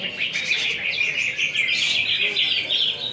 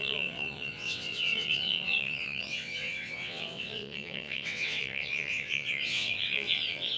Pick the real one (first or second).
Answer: first